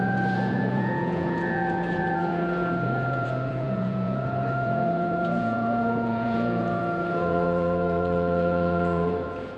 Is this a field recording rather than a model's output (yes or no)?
no